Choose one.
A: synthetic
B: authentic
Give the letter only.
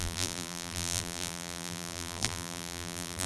A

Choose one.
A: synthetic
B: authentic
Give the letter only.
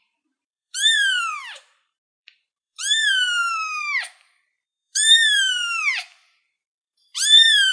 A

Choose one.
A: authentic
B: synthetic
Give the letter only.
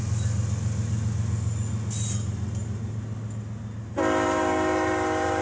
A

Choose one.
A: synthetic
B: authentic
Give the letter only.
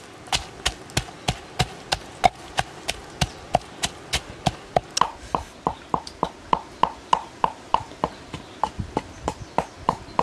B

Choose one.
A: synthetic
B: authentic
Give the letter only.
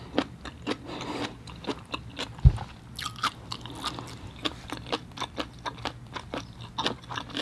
B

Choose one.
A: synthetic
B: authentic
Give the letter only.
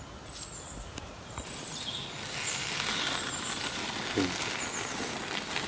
B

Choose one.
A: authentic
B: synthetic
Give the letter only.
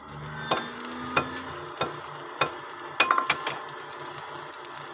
A